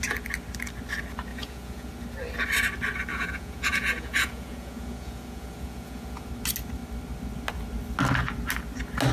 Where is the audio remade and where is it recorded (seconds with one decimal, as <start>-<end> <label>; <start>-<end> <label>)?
0.0-1.3 recorded; 1.3-1.9 remade; 1.9-3.1 recorded; 3.1-6.3 remade; 6.3-9.1 recorded